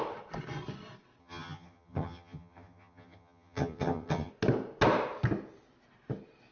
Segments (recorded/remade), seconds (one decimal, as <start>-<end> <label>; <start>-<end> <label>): 0.0-1.2 recorded; 1.2-4.3 remade; 4.3-6.5 recorded